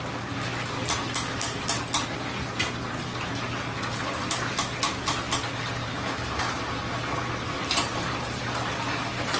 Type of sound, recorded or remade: recorded